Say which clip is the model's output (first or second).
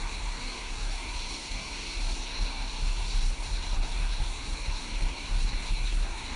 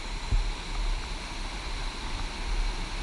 first